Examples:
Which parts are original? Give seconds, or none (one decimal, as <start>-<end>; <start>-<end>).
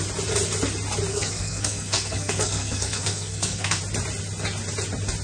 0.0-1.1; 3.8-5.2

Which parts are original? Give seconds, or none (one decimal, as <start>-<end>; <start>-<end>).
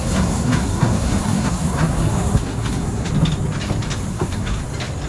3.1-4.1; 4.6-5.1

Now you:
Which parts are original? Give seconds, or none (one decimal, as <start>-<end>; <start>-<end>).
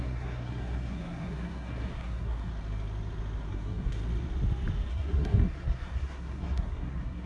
2.5-3.5; 4.0-4.9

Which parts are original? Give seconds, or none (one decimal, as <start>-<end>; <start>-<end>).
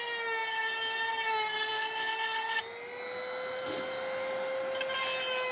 0.0-5.5